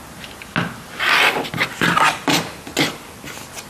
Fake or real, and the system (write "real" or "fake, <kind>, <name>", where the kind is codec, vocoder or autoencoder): real